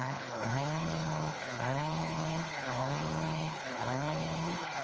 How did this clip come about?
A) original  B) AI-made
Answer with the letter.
B